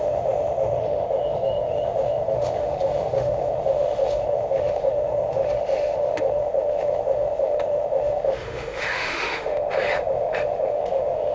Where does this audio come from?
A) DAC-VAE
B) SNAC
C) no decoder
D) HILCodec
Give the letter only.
A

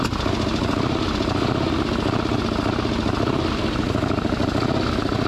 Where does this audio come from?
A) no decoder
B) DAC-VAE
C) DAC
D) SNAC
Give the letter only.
A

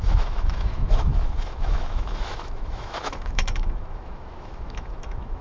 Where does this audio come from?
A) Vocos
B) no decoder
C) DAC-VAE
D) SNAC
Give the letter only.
C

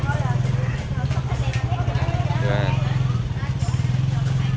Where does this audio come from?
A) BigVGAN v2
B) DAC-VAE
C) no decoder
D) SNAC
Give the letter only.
C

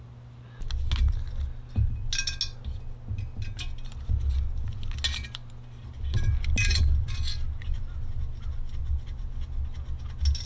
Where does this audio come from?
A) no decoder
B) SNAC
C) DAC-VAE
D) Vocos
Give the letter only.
A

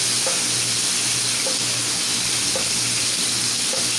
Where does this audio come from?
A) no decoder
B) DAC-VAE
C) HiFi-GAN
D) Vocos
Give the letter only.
A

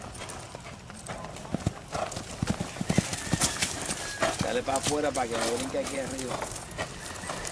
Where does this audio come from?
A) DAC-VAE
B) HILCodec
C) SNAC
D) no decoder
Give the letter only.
D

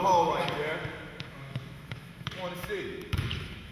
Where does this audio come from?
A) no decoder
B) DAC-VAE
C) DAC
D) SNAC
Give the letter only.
B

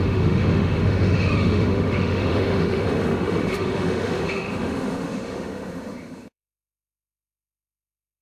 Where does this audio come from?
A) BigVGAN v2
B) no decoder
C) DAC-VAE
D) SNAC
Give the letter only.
C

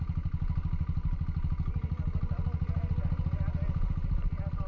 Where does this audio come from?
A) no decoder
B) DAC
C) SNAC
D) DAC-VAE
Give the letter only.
A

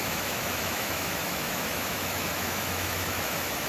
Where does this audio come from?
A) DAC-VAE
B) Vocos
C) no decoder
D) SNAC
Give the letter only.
A